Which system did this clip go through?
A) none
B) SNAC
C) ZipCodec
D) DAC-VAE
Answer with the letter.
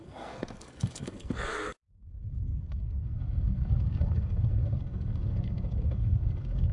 B